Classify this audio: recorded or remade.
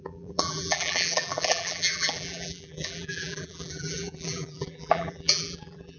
remade